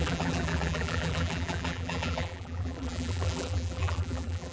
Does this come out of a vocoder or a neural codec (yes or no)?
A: yes